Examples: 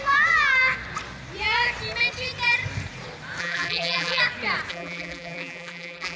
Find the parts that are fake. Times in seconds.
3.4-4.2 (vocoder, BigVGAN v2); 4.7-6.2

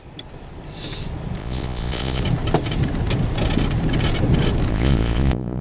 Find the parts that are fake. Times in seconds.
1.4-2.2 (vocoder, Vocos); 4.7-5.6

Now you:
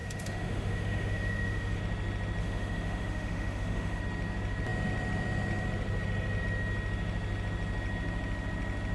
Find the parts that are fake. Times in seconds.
0.0-1.8 (autoencoder, DAC-VAE); 2.4-4.0